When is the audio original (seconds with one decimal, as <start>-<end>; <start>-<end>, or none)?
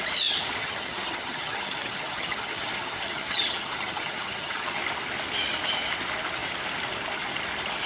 0.0-0.6; 4.8-7.9